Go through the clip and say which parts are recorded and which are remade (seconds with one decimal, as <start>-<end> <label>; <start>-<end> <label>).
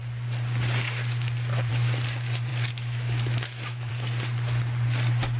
0.0-2.5 recorded; 2.5-3.9 remade; 3.9-5.4 recorded